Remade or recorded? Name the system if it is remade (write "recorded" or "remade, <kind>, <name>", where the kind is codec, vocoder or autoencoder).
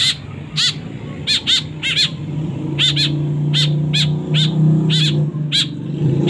recorded